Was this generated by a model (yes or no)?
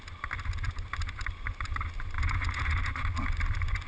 no